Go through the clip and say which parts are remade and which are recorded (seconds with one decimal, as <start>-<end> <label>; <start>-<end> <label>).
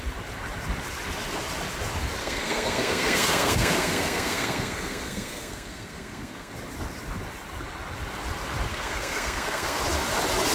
0.0-2.2 recorded; 2.2-6.5 remade; 6.5-8.7 recorded; 8.7-9.8 remade; 9.8-10.5 recorded